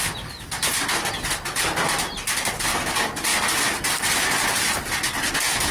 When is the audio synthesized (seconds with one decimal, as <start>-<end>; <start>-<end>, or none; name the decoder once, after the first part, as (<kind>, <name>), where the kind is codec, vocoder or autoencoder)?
none